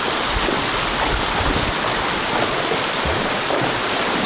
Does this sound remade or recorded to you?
recorded